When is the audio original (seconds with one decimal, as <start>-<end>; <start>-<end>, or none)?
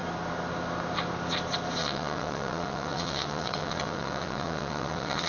0.0-1.8